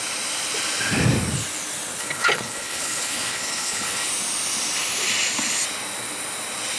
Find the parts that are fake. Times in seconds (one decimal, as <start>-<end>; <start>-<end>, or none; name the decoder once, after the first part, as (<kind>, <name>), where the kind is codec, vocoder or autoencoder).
2.0-4.1 (codec, HILCodec)